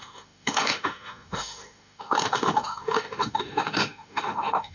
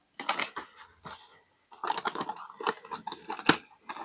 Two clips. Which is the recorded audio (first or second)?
second